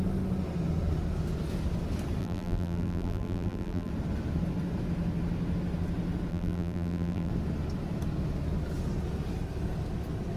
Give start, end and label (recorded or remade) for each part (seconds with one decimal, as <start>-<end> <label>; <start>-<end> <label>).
0.0-2.2 recorded; 2.2-3.9 remade; 3.9-6.3 recorded; 6.3-7.3 remade; 7.3-10.4 recorded